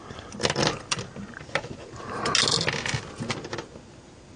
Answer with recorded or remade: recorded